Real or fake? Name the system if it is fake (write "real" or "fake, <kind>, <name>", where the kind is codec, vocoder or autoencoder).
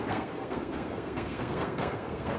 fake, codec, SNAC